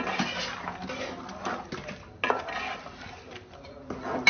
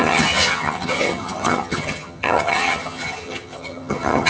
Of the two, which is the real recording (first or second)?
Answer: first